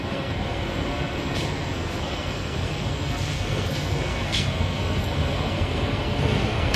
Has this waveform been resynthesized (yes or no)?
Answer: yes